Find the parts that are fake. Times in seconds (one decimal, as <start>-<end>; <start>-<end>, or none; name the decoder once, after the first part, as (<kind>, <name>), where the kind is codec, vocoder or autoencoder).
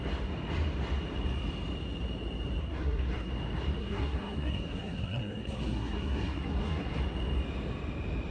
2.6-3.3 (codec, SNAC); 3.8-7.0